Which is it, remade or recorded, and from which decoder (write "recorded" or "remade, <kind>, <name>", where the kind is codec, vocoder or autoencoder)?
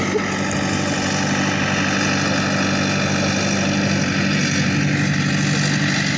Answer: recorded